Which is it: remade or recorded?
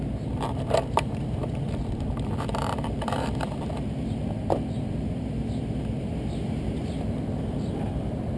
remade